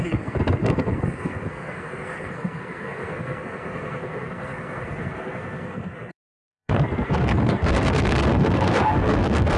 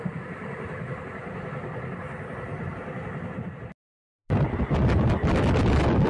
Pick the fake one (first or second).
first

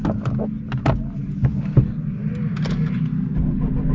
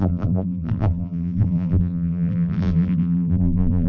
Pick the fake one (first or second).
second